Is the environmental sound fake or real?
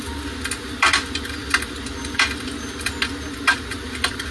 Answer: real